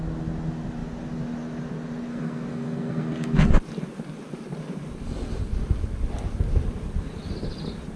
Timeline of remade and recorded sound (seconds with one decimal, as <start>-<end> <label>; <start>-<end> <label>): 0.0-2.1 recorded; 2.1-3.5 remade; 3.5-8.0 recorded

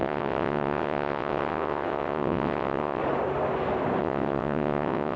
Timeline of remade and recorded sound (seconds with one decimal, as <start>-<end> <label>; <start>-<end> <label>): 0.0-3.0 remade; 3.0-4.0 recorded; 4.0-5.2 remade

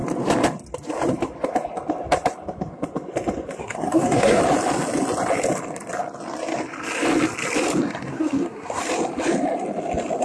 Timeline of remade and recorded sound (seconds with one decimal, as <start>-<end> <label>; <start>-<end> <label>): 0.0-3.6 recorded; 3.6-4.4 remade; 4.4-8.1 recorded; 8.1-8.8 remade; 8.8-10.2 recorded

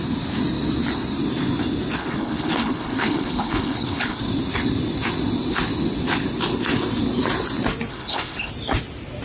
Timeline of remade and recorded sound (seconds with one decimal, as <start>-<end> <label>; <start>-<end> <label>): 0.0-2.0 recorded; 2.0-4.2 remade; 4.2-7.9 recorded; 7.9-8.5 remade; 8.5-9.2 recorded

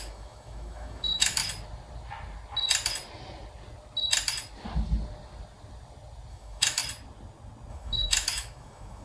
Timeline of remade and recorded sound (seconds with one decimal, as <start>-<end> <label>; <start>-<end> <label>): 0.0-1.4 remade; 1.4-6.3 recorded; 6.3-6.8 remade; 6.8-7.7 recorded; 7.7-9.0 remade